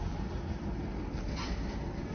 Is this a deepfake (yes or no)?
no